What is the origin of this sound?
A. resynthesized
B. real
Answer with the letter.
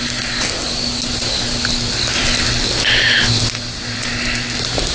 B